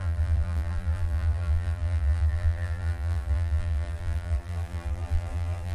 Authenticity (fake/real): fake